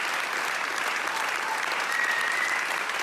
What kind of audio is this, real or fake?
real